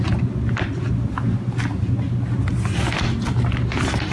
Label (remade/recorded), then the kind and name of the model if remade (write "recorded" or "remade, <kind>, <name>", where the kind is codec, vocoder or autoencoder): recorded